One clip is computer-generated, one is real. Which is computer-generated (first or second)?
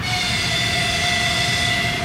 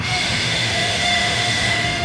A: second